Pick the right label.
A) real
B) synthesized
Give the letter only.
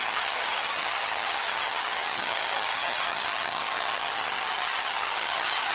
B